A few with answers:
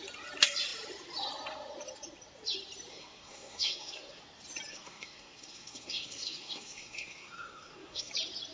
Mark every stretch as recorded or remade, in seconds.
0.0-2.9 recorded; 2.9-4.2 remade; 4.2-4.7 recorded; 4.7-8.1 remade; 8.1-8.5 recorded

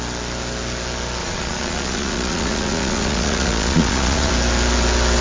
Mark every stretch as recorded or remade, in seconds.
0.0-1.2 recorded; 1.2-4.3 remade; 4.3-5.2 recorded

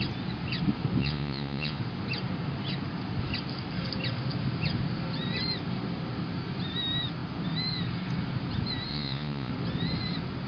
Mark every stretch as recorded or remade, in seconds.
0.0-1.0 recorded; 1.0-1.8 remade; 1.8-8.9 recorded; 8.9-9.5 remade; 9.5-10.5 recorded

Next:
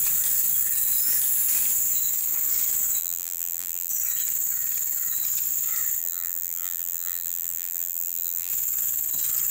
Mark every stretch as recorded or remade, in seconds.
0.0-3.0 recorded; 3.0-3.9 remade; 3.9-6.0 recorded; 6.0-8.5 remade; 8.5-9.5 recorded

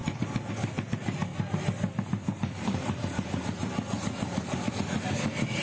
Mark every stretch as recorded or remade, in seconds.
0.0-0.5 remade; 0.5-5.6 recorded

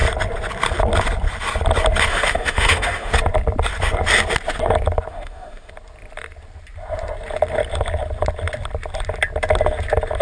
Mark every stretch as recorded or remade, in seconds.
0.0-2.1 recorded; 2.1-3.1 remade; 3.1-5.1 recorded; 5.1-5.7 remade; 5.7-10.2 recorded

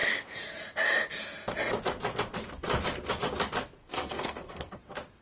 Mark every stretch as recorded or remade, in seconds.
0.0-3.8 recorded; 3.8-4.8 remade; 4.8-5.2 recorded